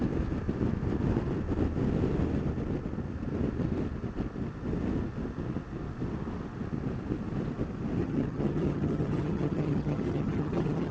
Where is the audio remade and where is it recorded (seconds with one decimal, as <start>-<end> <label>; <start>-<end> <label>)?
0.0-8.0 recorded; 8.0-10.9 remade